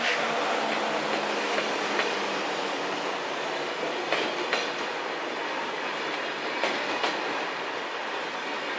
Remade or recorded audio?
recorded